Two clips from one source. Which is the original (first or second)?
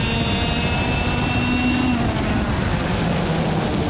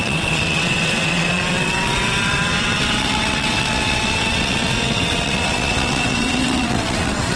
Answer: first